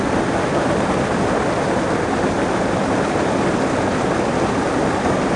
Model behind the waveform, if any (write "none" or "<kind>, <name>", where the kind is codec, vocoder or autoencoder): none